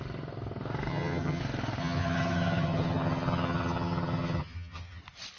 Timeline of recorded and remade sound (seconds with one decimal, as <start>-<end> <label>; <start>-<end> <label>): 0.0-0.9 recorded; 0.9-1.4 remade; 1.4-1.8 recorded; 1.8-5.0 remade; 5.0-5.4 recorded